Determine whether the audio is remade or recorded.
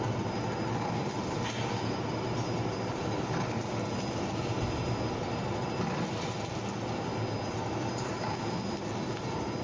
recorded